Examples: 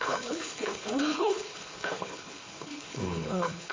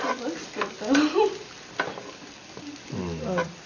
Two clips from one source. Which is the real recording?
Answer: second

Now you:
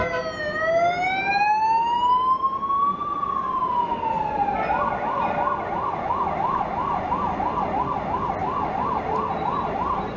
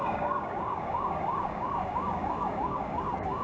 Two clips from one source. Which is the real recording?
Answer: first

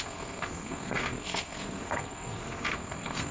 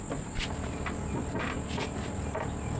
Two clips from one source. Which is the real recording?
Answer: second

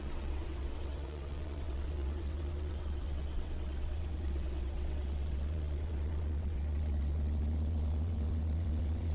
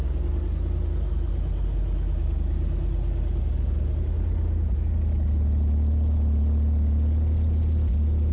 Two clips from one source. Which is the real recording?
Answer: second